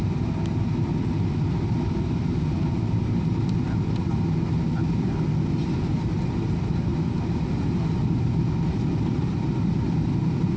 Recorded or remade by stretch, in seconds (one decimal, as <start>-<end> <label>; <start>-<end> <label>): 0.0-10.6 recorded